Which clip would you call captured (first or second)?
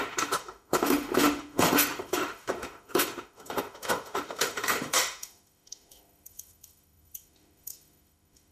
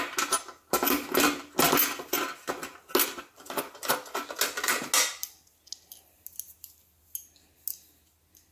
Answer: second